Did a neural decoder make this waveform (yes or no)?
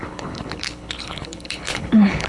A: yes